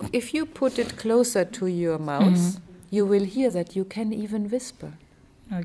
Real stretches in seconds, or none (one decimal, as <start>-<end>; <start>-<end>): 0.0-2.6; 3.5-5.6